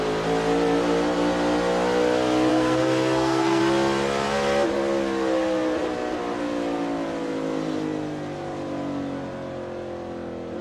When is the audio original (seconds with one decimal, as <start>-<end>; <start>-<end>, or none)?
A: 0.0-2.5; 3.6-10.6